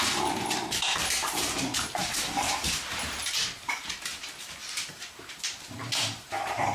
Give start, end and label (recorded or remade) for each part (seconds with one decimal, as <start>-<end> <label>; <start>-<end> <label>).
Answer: 0.0-6.7 remade